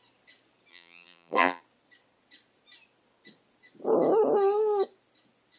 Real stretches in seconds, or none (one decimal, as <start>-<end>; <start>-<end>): 0.0-0.7; 1.6-5.6